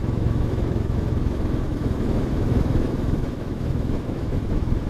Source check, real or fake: fake